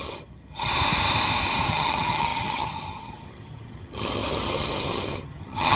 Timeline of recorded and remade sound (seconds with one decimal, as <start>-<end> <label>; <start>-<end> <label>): 0.0-0.7 remade; 0.7-1.7 recorded; 1.7-5.8 remade